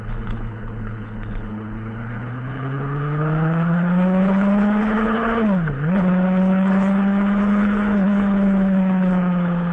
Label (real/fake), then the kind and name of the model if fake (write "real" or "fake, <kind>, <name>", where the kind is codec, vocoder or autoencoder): fake, codec, HILCodec